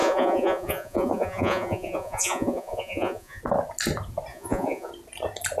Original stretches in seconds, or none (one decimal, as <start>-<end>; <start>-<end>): 3.4-4.3; 4.9-5.6